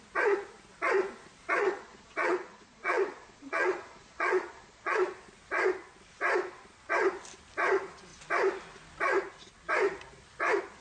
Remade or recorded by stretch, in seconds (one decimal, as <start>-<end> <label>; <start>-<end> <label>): 0.0-1.6 recorded; 1.6-5.1 remade; 5.1-10.8 recorded